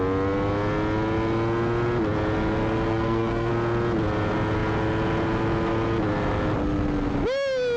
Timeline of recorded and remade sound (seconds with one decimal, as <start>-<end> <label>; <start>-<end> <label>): 0.0-2.9 recorded; 2.9-3.5 remade; 3.5-7.8 recorded